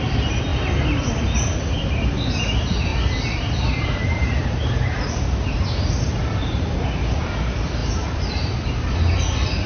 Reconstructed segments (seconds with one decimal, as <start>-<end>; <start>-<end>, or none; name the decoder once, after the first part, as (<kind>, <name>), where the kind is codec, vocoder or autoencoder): 2.9-6.8 (vocoder, BigVGAN v2); 7.8-8.3